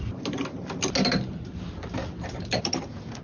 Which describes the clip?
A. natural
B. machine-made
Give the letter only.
A